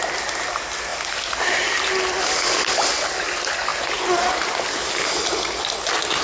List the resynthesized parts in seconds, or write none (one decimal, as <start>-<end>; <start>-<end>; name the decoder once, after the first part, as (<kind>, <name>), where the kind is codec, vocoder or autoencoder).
0.9-1.9 (vocoder, BigVGAN v2); 3.7-4.3